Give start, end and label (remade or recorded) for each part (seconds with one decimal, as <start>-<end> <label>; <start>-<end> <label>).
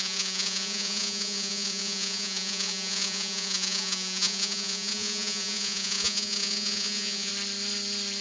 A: 0.0-7.3 remade; 7.3-8.2 recorded